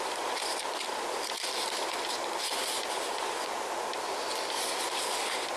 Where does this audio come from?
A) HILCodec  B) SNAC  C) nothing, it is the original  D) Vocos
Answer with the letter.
C